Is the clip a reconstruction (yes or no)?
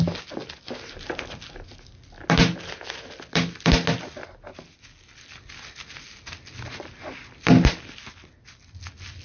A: no